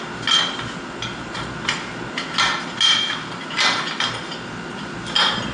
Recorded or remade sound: recorded